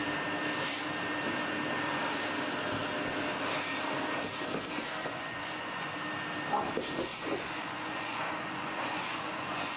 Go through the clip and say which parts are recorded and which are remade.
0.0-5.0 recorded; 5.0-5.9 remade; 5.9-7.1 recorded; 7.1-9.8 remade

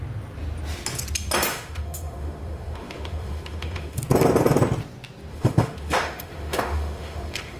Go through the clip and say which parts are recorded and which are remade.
0.0-1.5 recorded; 1.5-4.0 remade; 4.0-5.3 recorded; 5.3-7.6 remade

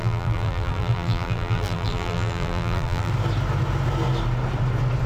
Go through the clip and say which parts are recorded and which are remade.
0.0-3.1 remade; 3.1-5.1 recorded

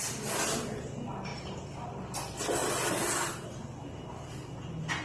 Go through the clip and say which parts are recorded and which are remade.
0.0-5.0 recorded